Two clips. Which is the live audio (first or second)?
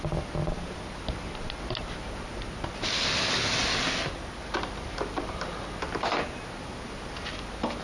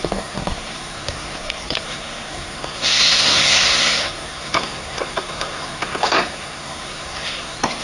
first